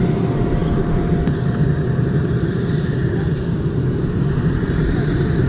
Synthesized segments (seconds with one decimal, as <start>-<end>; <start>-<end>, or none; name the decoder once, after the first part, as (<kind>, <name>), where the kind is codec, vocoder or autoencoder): none